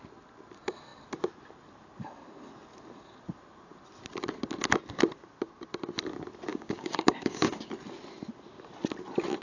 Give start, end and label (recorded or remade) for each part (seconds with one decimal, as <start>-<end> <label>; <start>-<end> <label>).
0.0-6.5 recorded; 6.5-7.7 remade; 7.7-9.4 recorded